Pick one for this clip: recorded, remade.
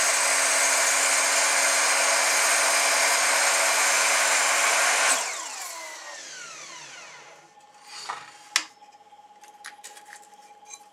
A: recorded